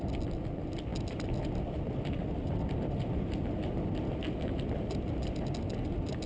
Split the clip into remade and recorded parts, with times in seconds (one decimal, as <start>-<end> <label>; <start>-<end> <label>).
0.0-6.3 recorded